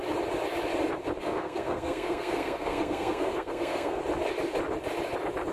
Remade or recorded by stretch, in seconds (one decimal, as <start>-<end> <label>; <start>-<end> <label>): 0.0-1.2 recorded; 1.2-4.0 remade; 4.0-5.5 recorded

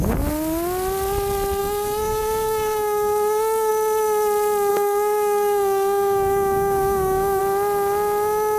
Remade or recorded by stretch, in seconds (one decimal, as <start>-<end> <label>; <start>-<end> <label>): 0.0-1.6 recorded; 1.6-3.7 remade; 3.7-4.7 recorded; 4.7-7.4 remade; 7.4-8.6 recorded

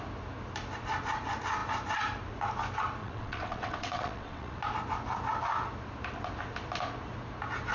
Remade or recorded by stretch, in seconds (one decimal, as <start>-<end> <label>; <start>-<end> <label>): 0.0-3.0 recorded; 3.0-4.6 remade; 4.6-7.7 recorded